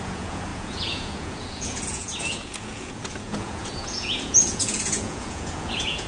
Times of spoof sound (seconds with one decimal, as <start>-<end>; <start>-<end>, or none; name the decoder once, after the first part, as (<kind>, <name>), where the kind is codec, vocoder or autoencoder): 0.0-6.1 (vocoder, Vocos)

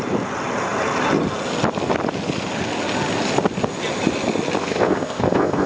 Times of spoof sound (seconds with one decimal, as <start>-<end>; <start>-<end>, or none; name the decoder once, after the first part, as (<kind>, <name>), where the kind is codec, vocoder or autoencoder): 4.6-5.7 (codec, ZipCodec)

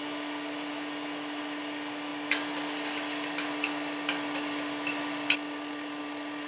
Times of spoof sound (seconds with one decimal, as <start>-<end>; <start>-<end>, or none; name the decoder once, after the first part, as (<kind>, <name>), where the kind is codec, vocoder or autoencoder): none

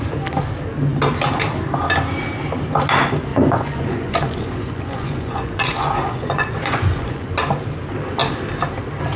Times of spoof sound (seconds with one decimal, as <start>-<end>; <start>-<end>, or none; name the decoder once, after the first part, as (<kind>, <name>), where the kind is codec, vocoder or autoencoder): 3.3-7.3 (vocoder, Vocos)

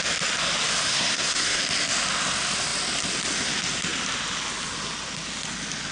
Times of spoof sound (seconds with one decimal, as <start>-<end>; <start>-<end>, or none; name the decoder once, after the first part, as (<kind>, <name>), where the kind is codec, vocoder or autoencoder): 0.9-1.6 (codec, SNAC)

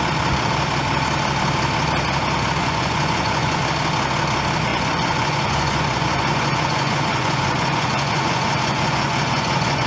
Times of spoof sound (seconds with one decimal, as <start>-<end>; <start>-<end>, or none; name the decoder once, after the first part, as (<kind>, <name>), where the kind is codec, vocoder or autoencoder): 2.6-3.6 (vocoder, Vocos); 4.7-9.9

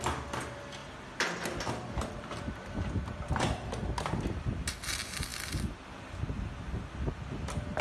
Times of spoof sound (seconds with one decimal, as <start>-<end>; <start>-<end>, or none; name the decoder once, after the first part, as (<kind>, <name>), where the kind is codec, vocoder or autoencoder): none

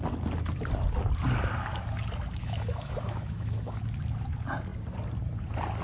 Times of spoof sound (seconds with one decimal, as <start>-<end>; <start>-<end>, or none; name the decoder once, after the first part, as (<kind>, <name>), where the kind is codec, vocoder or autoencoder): 2.4-3.8 (autoencoder, DAC-VAE)